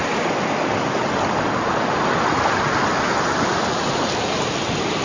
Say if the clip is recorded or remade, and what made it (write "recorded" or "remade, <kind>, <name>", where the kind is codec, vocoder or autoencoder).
recorded